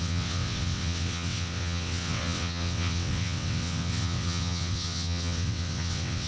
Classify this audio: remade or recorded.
remade